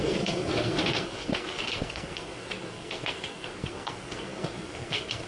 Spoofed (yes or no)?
yes